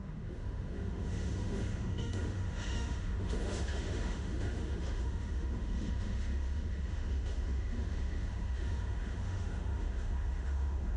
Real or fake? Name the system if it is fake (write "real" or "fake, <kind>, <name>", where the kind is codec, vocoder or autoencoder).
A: fake, autoencoder, DAC-VAE